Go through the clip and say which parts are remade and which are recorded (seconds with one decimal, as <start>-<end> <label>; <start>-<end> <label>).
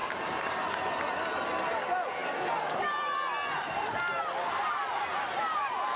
0.0-0.7 remade; 0.7-6.0 recorded